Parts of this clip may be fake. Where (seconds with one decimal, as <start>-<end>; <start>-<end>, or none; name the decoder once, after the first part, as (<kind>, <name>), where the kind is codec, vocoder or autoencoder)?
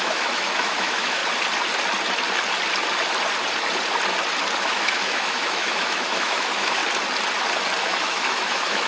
0.0-1.2 (autoencoder, DAC-VAE); 4.6-6.8; 7.8-8.9